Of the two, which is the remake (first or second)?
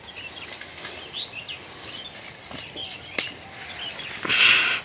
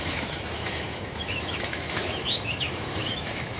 second